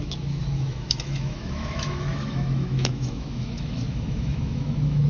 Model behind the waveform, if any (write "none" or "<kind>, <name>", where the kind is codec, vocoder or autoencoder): autoencoder, DAC-VAE